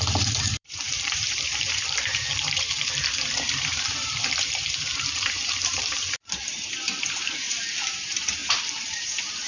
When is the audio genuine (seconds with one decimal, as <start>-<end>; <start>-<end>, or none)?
none